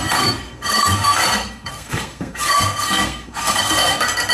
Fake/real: fake